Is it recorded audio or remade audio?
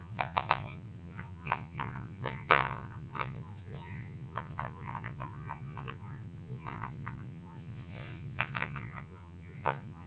remade